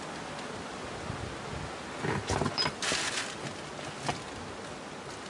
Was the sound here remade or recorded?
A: recorded